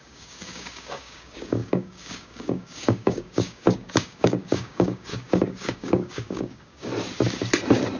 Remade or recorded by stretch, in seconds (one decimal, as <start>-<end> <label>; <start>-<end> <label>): 0.0-6.9 remade; 6.9-8.0 recorded